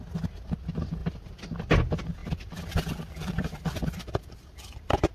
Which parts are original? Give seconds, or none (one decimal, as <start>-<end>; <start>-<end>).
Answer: 0.0-1.0; 1.6-2.2